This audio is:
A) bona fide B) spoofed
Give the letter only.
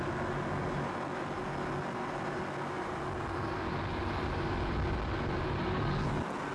A